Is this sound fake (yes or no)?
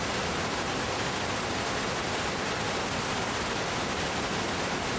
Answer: no